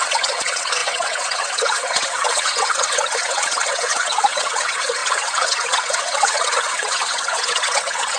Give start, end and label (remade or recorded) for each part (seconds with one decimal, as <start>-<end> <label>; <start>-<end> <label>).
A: 0.0-8.2 remade